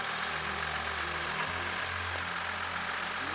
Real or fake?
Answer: real